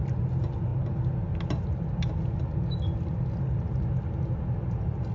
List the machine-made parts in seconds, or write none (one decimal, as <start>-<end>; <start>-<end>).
none